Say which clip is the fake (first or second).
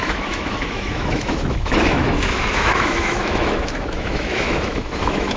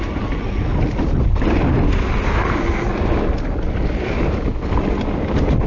first